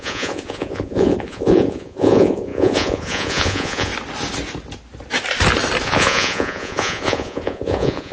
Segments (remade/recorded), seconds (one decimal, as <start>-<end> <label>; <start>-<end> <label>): 0.0-3.9 remade; 3.9-5.8 recorded; 5.8-8.1 remade